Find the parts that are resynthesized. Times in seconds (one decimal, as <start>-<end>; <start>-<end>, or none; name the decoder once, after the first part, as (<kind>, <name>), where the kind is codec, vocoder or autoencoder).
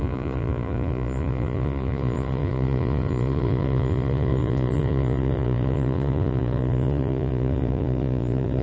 0.0-8.6 (vocoder, Vocos)